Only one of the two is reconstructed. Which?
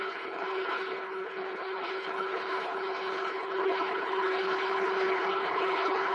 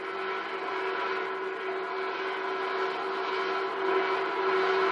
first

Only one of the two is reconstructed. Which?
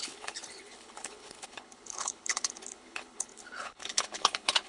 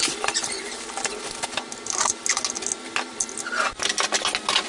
first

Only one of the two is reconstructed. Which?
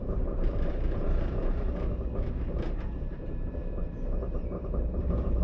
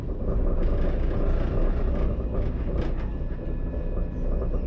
first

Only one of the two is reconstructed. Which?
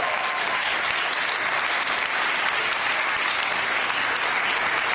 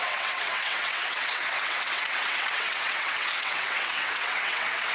second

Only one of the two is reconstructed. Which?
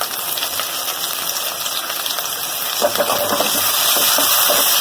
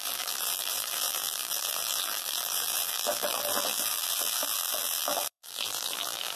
second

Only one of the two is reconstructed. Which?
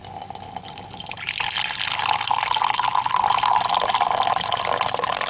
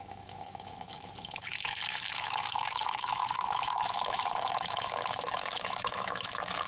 second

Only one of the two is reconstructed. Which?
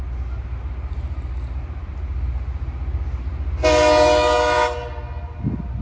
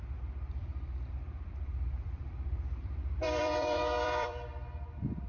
second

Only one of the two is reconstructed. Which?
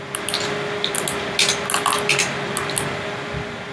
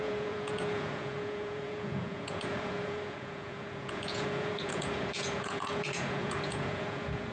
second